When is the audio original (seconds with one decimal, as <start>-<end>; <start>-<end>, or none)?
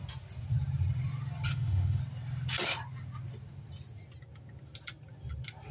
0.0-1.5; 2.0-5.7